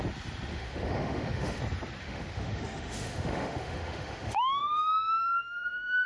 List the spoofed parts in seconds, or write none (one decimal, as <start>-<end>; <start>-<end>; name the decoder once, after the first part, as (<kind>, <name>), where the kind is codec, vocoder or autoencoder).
0.5-1.6 (autoencoder, DAC-VAE); 2.0-6.1